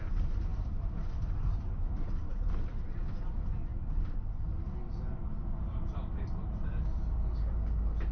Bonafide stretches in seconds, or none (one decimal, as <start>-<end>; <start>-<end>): 0.0-0.5; 1.6-5.7; 6.4-8.1